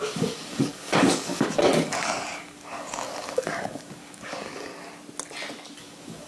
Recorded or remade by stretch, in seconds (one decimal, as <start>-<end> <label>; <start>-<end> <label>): 0.0-4.7 remade; 4.7-5.8 recorded; 5.8-6.3 remade